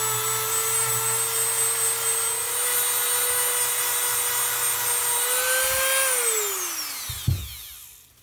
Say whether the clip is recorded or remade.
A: recorded